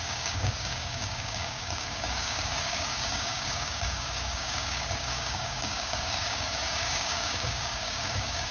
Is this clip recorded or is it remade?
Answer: remade